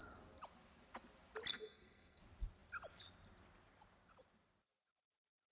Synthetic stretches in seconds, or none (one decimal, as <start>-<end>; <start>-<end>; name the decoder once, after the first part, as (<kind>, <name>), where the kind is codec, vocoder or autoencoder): 1.5-2.2 (codec, SNAC)